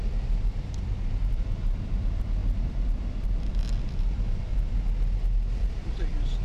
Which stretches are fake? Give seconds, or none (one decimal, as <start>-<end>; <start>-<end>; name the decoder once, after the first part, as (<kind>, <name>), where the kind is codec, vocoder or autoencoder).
0.0-4.5 (vocoder, BigVGAN v2); 5.7-6.4